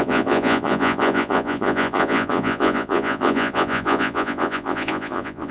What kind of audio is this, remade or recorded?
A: remade